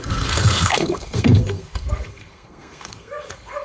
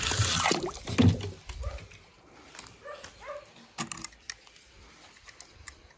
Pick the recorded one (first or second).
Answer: second